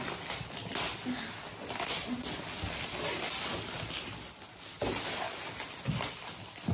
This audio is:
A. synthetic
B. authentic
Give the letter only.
B